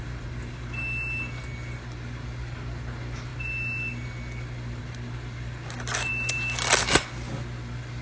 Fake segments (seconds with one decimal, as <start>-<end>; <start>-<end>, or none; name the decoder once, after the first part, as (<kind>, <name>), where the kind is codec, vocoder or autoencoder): none